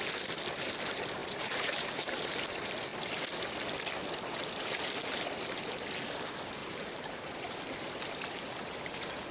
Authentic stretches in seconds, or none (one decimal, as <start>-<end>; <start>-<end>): 0.0-1.2; 2.3-6.6; 7.6-9.3